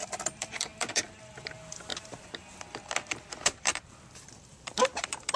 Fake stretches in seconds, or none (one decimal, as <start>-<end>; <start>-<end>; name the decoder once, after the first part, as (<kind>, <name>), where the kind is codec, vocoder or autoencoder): 0.0-1.9 (vocoder, BigVGAN v2); 4.3-5.4